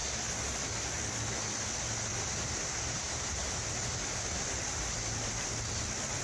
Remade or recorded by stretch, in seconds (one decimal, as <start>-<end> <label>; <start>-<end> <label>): 0.0-2.1 recorded; 2.1-4.2 remade; 4.2-6.2 recorded